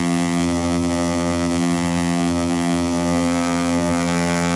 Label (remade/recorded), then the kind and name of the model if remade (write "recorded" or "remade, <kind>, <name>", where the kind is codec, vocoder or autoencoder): remade, vocoder, BigVGAN v2